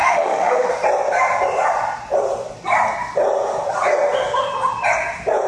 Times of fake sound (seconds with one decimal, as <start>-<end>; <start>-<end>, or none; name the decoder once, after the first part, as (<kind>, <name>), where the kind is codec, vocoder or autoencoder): 0.0-0.7 (autoencoder, DAC-VAE)